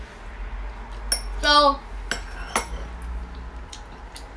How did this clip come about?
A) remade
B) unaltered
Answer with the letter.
B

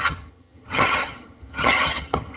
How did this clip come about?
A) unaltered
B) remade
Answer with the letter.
B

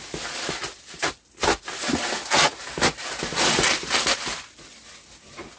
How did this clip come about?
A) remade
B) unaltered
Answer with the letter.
B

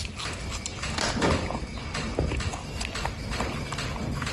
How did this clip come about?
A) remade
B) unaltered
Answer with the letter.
B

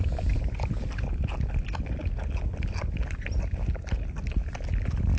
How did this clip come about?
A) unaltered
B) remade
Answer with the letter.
A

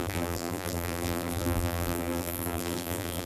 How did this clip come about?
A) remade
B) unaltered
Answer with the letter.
A